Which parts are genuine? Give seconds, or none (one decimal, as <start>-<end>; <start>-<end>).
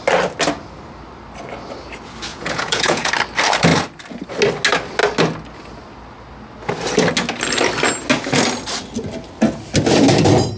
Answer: 0.0-2.3; 3.1-10.6